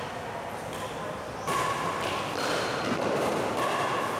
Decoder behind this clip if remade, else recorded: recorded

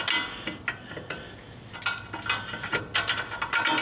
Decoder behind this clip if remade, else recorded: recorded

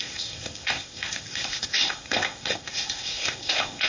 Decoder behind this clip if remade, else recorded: remade, codec, ZipCodec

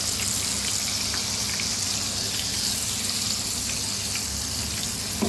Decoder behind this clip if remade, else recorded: recorded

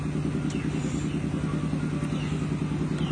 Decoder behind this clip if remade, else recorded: recorded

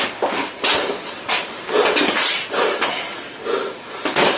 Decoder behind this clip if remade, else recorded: recorded